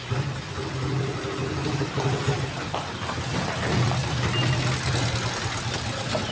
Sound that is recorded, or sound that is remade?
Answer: recorded